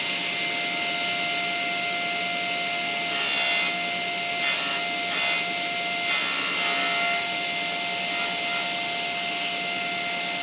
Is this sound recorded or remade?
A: recorded